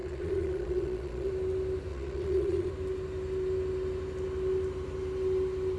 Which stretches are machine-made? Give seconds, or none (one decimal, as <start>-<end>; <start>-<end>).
0.0-1.3; 1.9-2.7